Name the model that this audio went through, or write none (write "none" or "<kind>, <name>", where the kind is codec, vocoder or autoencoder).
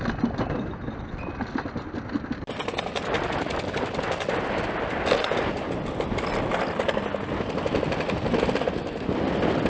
none